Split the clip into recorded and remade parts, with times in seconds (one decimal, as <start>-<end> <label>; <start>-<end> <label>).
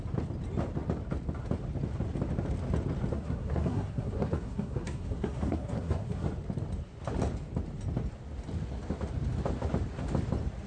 0.0-3.1 recorded; 3.1-6.3 remade; 6.3-10.7 recorded